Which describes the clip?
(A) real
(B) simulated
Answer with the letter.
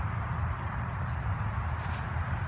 A